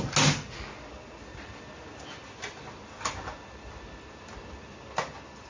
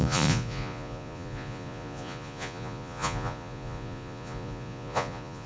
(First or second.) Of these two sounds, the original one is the first